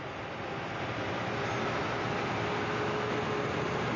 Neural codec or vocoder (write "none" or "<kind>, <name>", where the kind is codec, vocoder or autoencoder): none